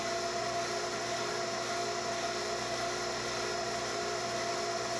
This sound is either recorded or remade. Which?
recorded